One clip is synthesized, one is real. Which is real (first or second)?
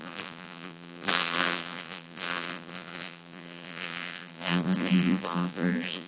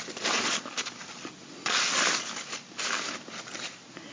second